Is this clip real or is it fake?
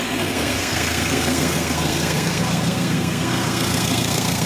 fake